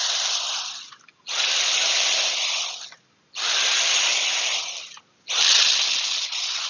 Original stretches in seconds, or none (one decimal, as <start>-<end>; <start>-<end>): 0.0-6.7